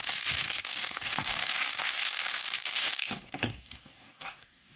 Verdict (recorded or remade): remade